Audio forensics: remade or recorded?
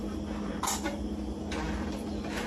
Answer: recorded